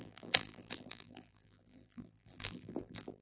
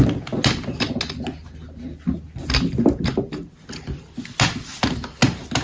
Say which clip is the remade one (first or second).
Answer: first